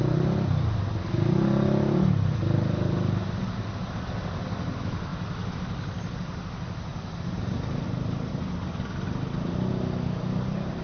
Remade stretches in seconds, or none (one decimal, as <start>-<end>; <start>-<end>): none